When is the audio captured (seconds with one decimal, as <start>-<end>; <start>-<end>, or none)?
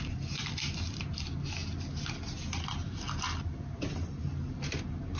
0.0-5.2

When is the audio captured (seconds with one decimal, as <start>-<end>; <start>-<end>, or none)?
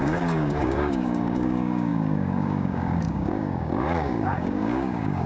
none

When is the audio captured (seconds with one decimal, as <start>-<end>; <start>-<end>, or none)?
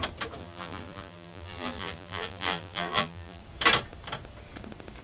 0.0-0.4; 3.4-5.0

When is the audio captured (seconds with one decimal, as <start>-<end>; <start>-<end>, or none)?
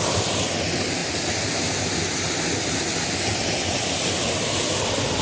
0.0-1.0; 1.8-5.2